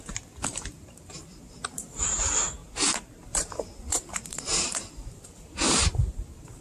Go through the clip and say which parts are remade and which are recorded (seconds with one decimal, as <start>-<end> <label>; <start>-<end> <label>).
0.0-0.5 recorded; 0.5-2.2 remade; 2.2-2.6 recorded; 2.6-6.6 remade